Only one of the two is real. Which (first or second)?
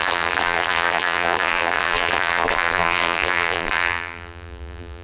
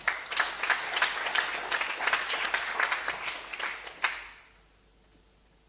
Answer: second